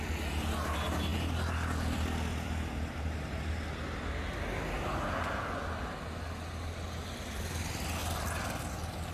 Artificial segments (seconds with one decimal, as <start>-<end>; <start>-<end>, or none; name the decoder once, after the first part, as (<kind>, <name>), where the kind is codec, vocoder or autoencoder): none